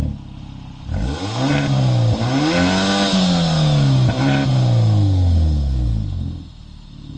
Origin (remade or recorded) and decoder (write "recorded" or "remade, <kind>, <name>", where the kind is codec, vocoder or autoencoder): recorded